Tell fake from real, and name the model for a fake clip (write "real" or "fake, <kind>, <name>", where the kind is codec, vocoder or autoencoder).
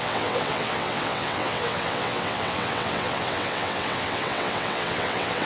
fake, vocoder, WaveNeXt